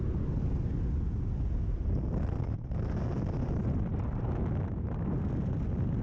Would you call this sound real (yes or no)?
yes